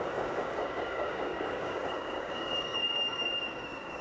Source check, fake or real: fake